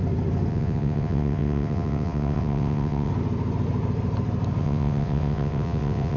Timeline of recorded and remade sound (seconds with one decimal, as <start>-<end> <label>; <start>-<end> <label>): 0.0-0.5 recorded; 0.5-3.1 remade; 3.1-4.6 recorded; 4.6-6.2 remade